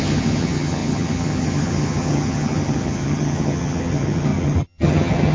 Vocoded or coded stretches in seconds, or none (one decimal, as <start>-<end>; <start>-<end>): 0.0-5.3